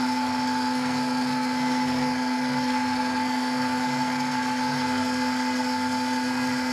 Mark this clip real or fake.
fake